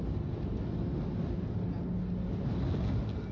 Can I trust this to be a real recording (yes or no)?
yes